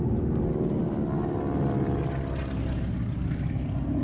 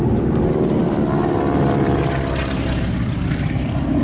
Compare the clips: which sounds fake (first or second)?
second